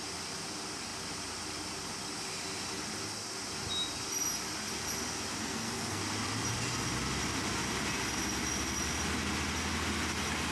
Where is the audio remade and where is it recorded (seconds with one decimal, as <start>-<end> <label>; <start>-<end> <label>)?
0.0-5.4 recorded; 5.4-6.0 remade; 6.0-10.5 recorded